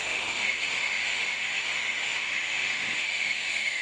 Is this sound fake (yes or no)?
yes